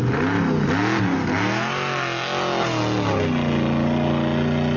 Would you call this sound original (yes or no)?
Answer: yes